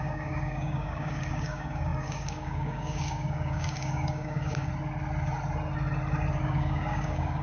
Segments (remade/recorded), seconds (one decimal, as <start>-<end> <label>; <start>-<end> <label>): 0.0-4.7 remade; 4.7-6.4 recorded; 6.4-7.4 remade